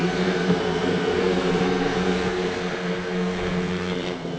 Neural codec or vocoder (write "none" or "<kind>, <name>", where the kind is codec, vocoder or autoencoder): codec, SNAC